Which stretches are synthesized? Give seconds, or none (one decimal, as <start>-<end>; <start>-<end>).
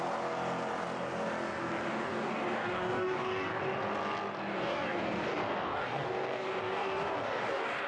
1.9-3.6; 4.5-7.9